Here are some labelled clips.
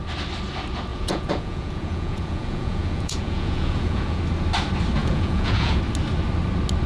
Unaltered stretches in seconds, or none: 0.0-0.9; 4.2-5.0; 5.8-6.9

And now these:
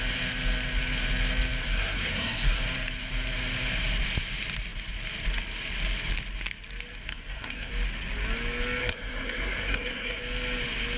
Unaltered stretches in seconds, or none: 0.0-1.6; 2.6-7.1; 7.7-8.8; 10.2-11.0

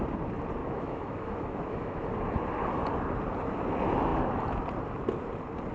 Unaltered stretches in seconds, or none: 0.0-0.6; 2.1-5.7

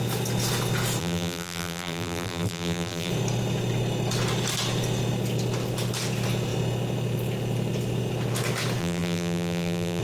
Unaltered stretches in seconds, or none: 0.0-1.0; 3.1-8.8

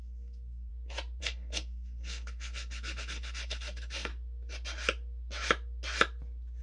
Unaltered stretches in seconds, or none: 0.7-1.2; 4.1-6.6

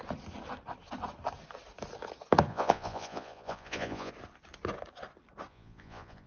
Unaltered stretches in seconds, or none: 0.0-2.5; 4.1-5.5